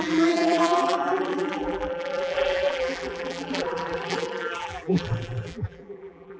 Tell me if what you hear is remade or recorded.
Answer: remade